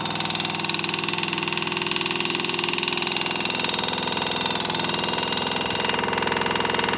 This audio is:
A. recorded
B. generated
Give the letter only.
A